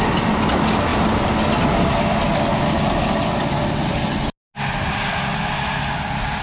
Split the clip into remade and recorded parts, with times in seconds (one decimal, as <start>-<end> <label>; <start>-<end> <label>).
0.0-6.4 recorded